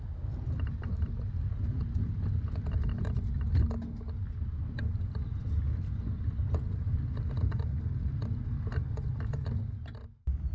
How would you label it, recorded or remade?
recorded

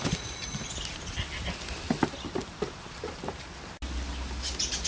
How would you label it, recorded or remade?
recorded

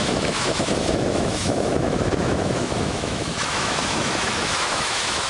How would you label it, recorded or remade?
remade